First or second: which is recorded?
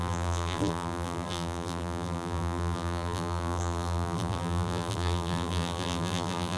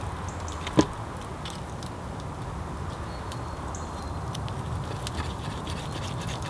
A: second